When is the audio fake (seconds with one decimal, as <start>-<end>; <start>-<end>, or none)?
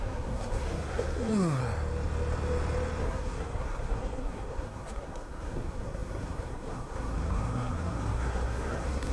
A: 0.0-1.6; 3.0-9.1